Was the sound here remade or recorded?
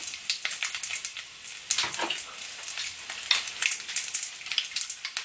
recorded